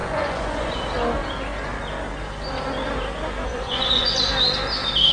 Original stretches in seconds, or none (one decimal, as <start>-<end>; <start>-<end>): 0.8-3.5; 4.2-5.1